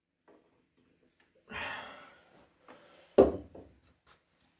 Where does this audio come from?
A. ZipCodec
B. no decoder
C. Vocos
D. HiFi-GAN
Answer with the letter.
B